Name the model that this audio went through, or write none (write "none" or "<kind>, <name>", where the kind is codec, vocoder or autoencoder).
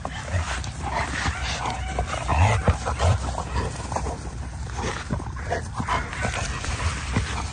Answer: none